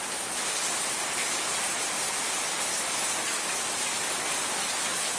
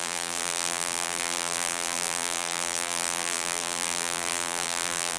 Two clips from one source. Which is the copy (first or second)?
second